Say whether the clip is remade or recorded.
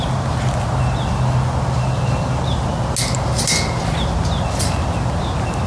recorded